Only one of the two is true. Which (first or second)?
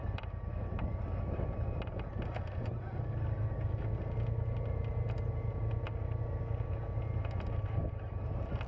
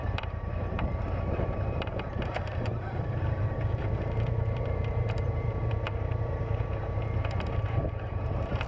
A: first